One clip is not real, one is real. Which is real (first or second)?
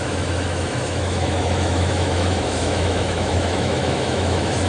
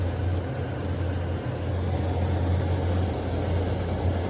second